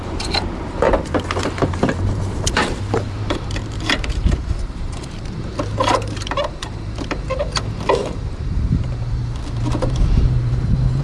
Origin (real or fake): fake